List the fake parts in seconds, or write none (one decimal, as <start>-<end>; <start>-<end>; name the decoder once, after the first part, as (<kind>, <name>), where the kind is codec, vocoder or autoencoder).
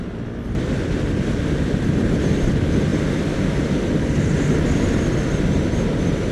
none